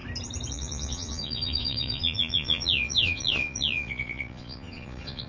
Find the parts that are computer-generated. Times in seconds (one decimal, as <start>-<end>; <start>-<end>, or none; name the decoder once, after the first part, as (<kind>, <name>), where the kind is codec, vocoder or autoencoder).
0.5-5.3 (vocoder, Vocos)